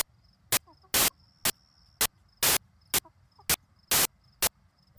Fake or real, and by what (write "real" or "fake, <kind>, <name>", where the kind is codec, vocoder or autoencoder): real